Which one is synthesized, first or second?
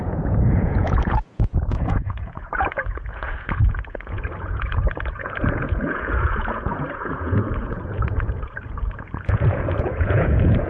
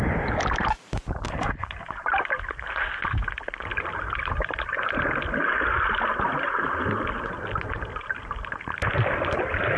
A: first